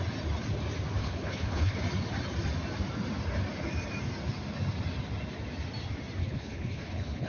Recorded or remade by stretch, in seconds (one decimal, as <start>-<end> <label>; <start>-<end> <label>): 0.0-1.0 recorded; 1.0-1.8 remade; 1.8-6.2 recorded; 6.2-7.3 remade